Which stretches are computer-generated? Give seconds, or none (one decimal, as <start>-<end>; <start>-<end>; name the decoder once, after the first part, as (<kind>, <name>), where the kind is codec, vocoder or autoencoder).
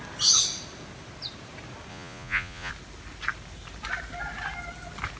1.9-2.7 (vocoder, Vocos)